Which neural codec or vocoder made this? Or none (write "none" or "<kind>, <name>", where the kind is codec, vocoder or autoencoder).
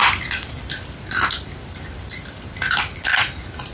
vocoder, BigVGAN v2